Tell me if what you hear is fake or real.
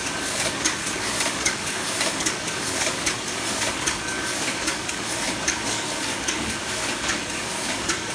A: fake